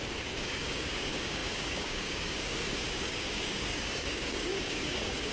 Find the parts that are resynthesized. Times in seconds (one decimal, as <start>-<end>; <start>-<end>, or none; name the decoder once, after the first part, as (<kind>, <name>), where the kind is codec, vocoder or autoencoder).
0.0-5.3 (codec, DAC)